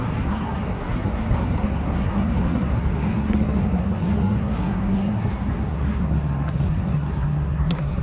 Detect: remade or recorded remade